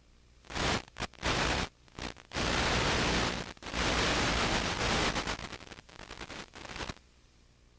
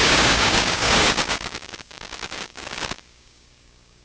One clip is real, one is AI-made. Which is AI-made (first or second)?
second